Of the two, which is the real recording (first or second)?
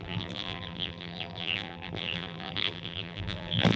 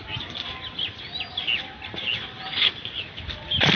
second